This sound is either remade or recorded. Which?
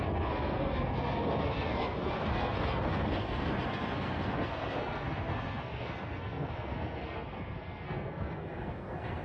remade